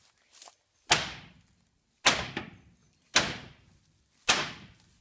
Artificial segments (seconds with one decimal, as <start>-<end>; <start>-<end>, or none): none